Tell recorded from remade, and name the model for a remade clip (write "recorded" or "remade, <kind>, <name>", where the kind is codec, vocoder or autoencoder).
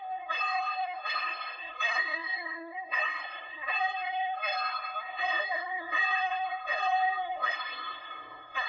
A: remade, codec, SNAC